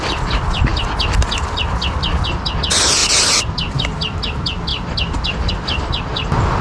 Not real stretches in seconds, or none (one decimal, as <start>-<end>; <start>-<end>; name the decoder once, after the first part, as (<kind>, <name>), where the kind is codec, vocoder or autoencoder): none